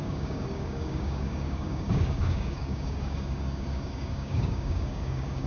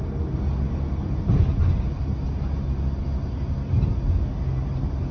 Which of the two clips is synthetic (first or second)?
first